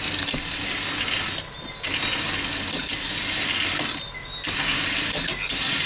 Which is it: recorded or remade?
recorded